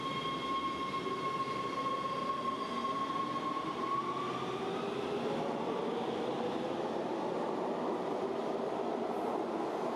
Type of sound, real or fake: real